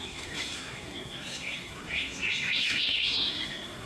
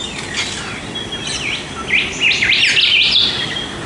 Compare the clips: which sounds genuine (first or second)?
second